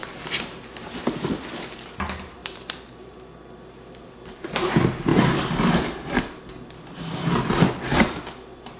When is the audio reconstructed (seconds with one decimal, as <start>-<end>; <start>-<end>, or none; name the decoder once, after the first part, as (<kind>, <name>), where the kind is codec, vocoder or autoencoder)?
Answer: 0.0-1.0 (vocoder, BigVGAN v2); 2.4-3.2